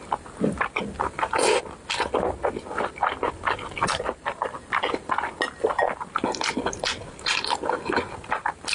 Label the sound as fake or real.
real